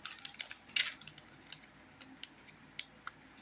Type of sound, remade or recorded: recorded